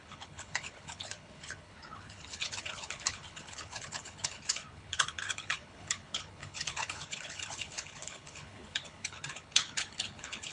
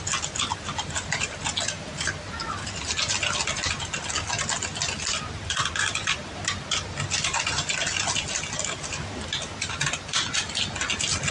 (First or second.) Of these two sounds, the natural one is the second